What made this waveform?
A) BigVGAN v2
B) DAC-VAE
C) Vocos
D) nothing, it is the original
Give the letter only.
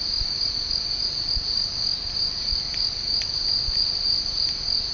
D